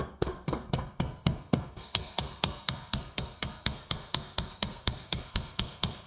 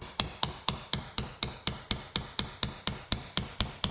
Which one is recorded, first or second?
second